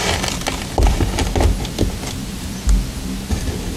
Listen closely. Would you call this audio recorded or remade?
remade